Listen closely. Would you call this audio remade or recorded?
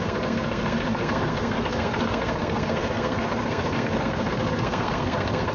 remade